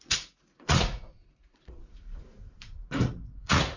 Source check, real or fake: fake